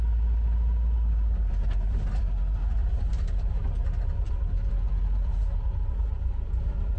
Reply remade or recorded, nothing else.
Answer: recorded